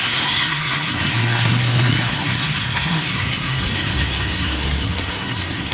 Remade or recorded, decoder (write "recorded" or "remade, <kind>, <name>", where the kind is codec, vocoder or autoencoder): remade, codec, SNAC